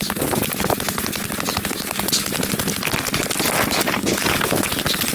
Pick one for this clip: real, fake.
real